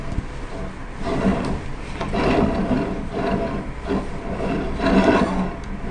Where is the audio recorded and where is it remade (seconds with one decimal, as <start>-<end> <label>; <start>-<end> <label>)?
0.0-5.9 recorded